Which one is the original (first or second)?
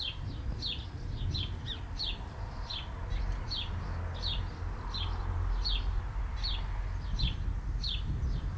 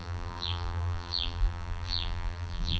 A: first